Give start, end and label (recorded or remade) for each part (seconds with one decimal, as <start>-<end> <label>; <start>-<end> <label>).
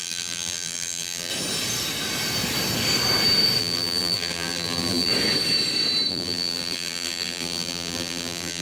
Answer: 0.0-1.3 remade; 1.3-3.6 recorded; 3.6-5.1 remade; 5.1-6.1 recorded; 6.1-8.6 remade